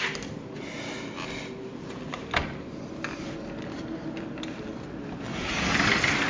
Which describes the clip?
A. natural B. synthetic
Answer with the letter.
A